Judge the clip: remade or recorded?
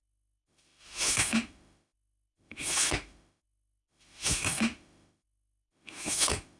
remade